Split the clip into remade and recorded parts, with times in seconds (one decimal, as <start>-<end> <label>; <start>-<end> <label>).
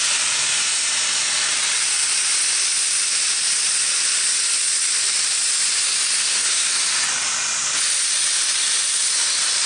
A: 0.0-6.2 recorded; 6.2-6.7 remade; 6.7-9.7 recorded